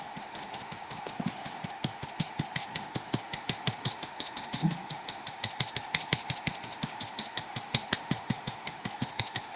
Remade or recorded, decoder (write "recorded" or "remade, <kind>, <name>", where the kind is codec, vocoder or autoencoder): remade, autoencoder, DAC-VAE